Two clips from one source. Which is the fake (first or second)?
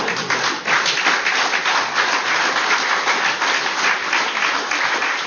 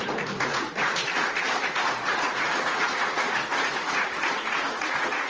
second